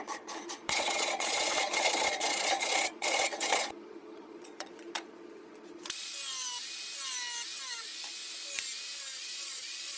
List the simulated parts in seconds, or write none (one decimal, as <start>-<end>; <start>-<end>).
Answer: 0.0-6.1; 9.2-10.0